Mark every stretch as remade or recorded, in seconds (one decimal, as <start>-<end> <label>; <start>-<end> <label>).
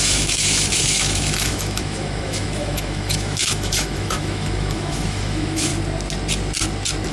0.0-5.7 remade; 5.7-7.1 recorded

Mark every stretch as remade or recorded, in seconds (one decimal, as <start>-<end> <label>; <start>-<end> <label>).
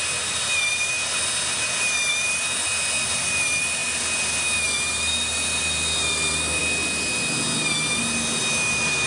0.0-9.1 recorded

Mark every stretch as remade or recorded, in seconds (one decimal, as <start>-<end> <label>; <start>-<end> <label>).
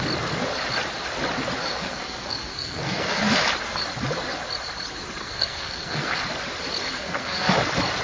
0.0-1.6 recorded; 1.6-3.2 remade; 3.2-5.2 recorded; 5.2-6.2 remade; 6.2-6.9 recorded; 6.9-7.5 remade; 7.5-8.0 recorded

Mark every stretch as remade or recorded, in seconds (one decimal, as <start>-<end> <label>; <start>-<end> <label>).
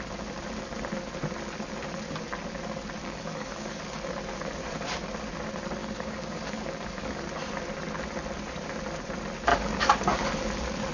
0.0-3.0 recorded; 3.0-3.8 remade; 3.8-5.8 recorded; 5.8-7.2 remade; 7.2-9.5 recorded; 9.5-10.4 remade; 10.4-10.9 recorded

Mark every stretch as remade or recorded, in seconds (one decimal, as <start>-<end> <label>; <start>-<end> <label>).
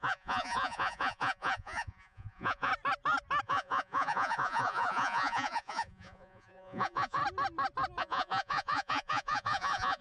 0.0-2.7 remade; 2.7-3.4 recorded; 3.4-7.2 remade; 7.2-8.0 recorded; 8.0-10.0 remade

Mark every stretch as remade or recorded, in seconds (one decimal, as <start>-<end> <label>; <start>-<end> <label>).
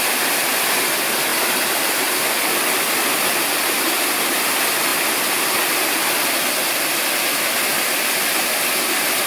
0.0-1.3 recorded; 1.3-4.0 remade; 4.0-4.9 recorded; 4.9-5.7 remade; 5.7-9.3 recorded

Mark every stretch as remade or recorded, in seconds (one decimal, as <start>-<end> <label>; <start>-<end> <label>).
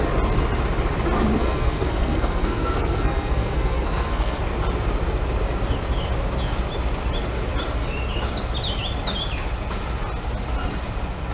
0.0-1.4 recorded; 1.4-4.4 remade; 4.4-11.3 recorded